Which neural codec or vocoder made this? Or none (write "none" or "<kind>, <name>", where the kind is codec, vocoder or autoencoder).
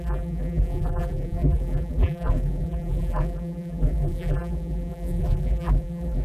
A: vocoder, BigVGAN v2